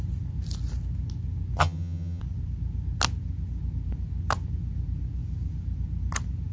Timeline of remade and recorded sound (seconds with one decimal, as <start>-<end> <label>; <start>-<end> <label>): 0.0-1.6 recorded; 1.6-2.2 remade; 2.2-6.5 recorded